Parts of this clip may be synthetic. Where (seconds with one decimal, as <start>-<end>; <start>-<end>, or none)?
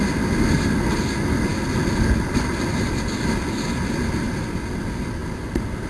none